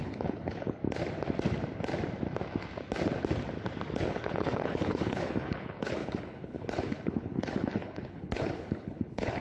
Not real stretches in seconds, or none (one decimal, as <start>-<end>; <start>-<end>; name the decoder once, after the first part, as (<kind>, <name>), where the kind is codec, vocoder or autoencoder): 0.0-0.8 (codec, HILCodec); 4.0-9.4